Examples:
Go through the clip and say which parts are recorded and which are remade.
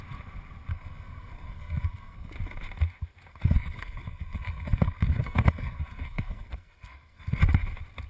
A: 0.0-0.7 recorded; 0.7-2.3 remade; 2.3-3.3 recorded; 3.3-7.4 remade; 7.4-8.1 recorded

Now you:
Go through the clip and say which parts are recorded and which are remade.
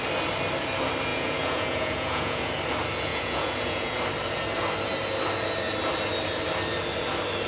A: 0.0-1.1 recorded; 1.1-2.5 remade; 2.5-3.1 recorded; 3.1-4.0 remade; 4.0-7.5 recorded